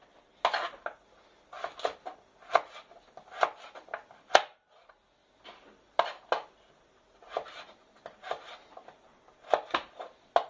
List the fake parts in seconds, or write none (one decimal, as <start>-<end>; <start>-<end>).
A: none

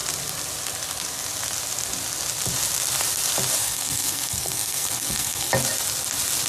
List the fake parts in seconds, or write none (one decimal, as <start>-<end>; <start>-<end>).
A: 3.6-5.5